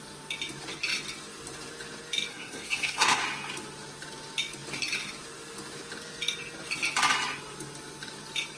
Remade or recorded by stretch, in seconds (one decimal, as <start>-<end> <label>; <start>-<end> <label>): 0.0-2.3 recorded; 2.3-3.2 remade; 3.2-8.6 recorded